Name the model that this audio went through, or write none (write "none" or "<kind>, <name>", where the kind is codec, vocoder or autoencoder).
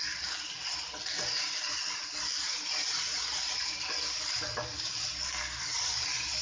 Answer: none